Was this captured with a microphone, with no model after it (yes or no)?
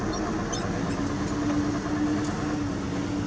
yes